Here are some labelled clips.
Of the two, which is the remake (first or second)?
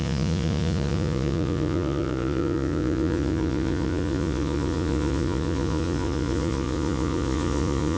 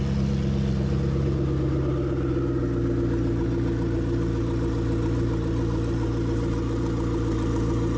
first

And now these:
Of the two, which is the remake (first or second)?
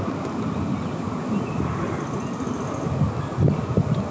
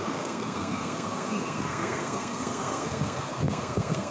second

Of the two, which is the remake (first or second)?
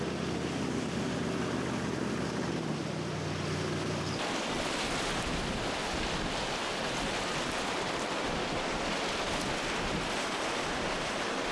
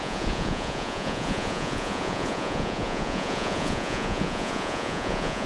second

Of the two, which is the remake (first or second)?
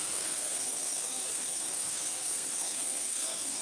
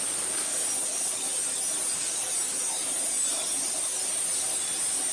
first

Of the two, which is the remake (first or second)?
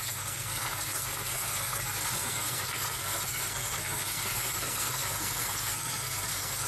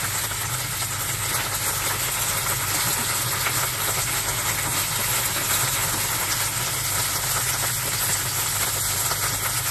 first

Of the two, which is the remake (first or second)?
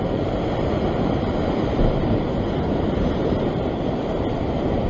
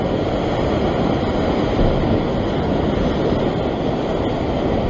first